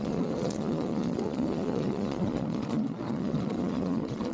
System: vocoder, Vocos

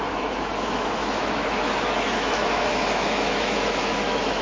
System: autoencoder, DAC-VAE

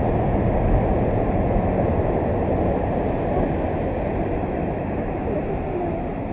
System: none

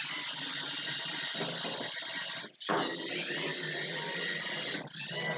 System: none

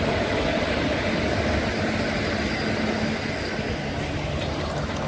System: none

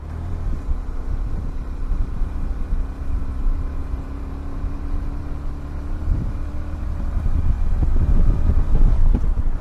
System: vocoder, BigVGAN v2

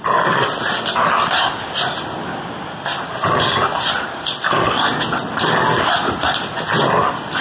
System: none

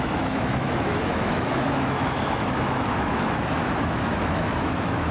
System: autoencoder, DAC-VAE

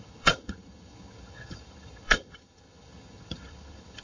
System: vocoder, HiFi-GAN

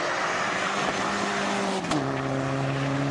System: none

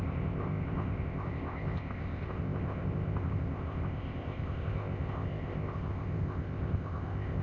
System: codec, ZipCodec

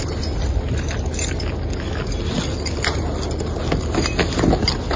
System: none